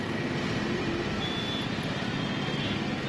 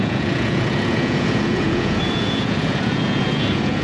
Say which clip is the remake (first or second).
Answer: second